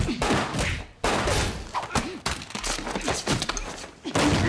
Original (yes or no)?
yes